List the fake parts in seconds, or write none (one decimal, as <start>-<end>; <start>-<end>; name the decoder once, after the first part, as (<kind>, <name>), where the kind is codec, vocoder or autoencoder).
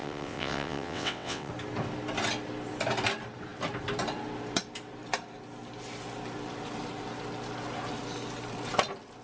0.0-1.5 (vocoder, WaveNeXt)